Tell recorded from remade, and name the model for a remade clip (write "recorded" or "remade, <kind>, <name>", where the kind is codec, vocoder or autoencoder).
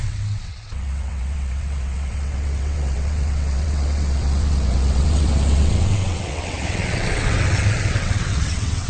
remade, vocoder, WaveNeXt